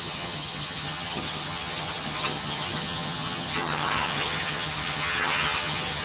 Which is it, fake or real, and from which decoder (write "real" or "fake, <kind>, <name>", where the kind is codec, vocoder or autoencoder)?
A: fake, vocoder, HiFi-GAN